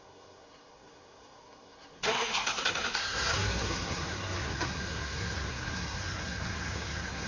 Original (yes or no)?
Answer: no